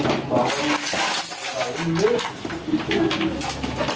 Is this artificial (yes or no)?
no